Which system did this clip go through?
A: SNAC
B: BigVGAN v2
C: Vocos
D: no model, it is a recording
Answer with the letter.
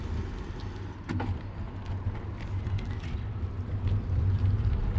D